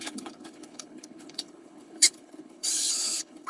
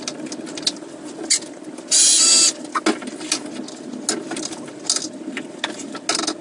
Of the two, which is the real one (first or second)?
second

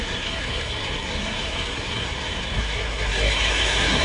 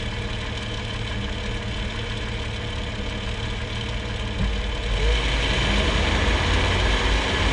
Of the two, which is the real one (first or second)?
second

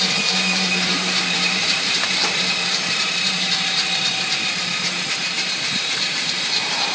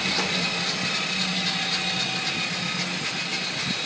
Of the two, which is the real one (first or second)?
second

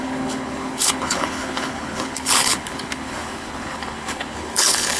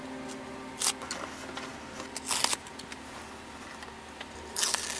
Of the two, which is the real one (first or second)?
second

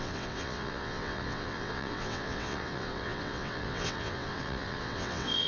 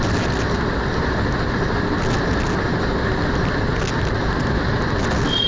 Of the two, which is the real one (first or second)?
second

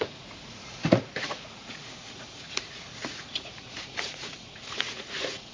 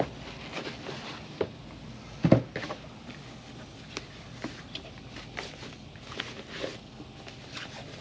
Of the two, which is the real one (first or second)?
second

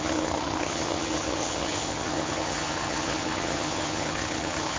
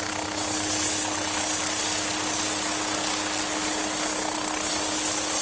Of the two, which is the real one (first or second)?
second